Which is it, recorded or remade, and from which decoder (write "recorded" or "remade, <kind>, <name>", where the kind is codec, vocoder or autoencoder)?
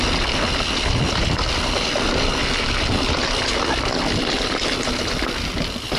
recorded